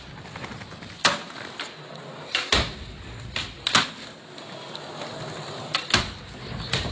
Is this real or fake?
real